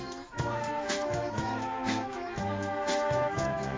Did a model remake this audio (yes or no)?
yes